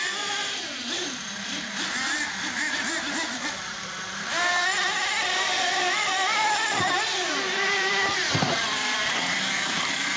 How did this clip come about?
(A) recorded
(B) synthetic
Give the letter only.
B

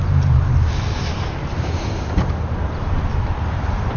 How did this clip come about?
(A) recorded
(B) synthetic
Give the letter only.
B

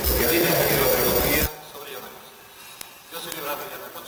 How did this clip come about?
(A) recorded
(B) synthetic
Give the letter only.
A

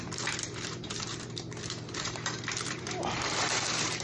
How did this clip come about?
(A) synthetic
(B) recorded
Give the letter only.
A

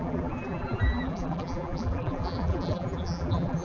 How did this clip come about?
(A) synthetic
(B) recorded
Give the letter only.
A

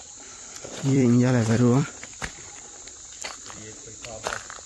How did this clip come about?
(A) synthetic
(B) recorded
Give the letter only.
A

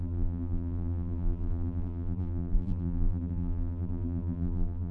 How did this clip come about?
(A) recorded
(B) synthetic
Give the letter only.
B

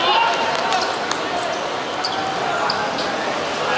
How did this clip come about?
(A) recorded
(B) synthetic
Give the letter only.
A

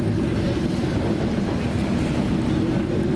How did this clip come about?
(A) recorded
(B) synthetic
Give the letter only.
A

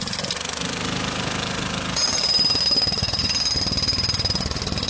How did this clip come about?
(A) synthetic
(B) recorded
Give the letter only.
B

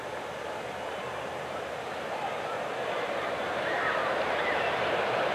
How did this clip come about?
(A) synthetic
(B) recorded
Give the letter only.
A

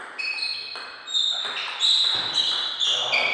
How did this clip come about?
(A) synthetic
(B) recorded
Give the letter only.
B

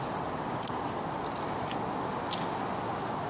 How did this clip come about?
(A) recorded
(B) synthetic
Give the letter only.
A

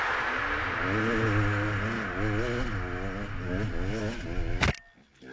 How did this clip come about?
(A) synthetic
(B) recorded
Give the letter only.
B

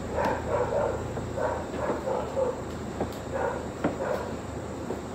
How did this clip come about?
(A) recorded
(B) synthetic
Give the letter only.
B